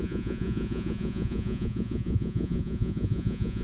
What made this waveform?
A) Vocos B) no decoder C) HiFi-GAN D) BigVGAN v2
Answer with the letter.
A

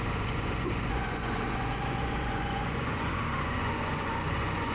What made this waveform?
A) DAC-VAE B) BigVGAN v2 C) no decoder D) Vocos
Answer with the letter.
D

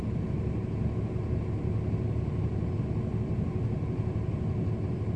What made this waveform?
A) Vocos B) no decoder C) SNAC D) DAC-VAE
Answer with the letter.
B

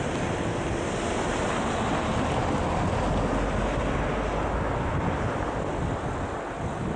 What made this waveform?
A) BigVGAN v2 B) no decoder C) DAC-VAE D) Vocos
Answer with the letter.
B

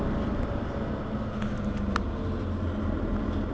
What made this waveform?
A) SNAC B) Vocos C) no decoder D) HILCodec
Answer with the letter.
C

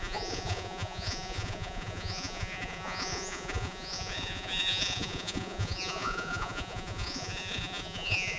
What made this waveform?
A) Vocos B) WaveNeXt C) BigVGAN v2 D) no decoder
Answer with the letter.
A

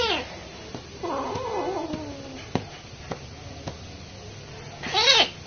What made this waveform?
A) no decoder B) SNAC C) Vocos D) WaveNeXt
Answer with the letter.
A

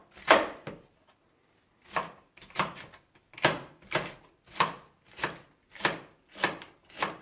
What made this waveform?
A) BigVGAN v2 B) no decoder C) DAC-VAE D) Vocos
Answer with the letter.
B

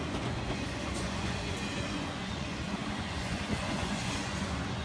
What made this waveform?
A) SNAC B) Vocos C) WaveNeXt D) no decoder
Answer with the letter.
B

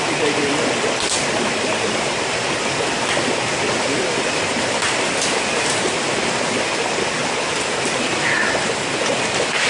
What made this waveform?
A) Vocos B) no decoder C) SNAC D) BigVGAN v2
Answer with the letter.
B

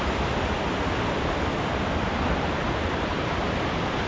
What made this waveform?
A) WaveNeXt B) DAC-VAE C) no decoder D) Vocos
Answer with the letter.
C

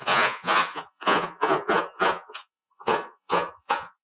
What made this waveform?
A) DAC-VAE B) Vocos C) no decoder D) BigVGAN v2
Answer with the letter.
B